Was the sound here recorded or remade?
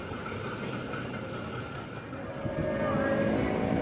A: recorded